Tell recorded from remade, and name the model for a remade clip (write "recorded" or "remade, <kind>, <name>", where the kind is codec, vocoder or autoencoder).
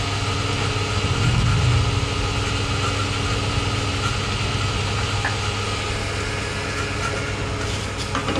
recorded